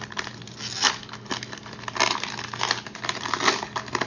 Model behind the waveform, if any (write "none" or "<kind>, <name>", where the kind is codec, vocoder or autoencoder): none